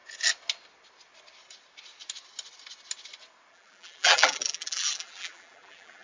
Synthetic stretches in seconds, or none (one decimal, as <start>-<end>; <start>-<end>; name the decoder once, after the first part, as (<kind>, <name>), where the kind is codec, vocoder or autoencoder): 3.5-6.0 (vocoder, BigVGAN v2)